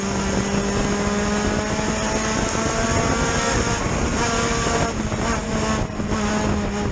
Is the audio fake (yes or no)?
no